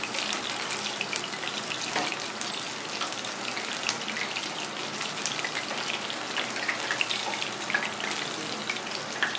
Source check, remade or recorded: recorded